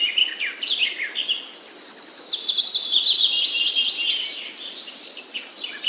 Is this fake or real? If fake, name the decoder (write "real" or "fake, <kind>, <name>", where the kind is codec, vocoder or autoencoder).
real